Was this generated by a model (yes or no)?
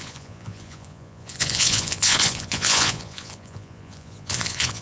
yes